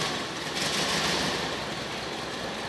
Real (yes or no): yes